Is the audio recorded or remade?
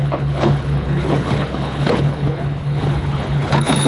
remade